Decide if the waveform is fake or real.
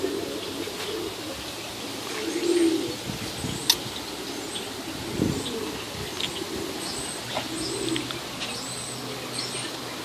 real